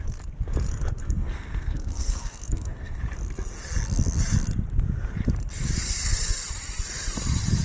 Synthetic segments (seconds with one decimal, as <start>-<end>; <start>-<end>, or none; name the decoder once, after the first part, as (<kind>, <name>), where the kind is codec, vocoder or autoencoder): 1.0-3.0 (codec, SNAC)